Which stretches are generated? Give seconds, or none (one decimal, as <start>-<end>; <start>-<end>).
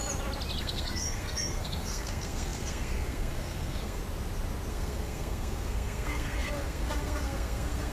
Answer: 0.6-4.0; 4.7-7.9